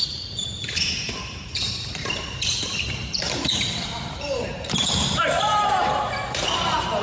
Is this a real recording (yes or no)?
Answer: no